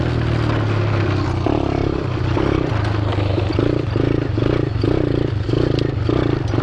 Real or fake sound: real